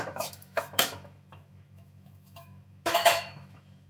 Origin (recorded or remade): remade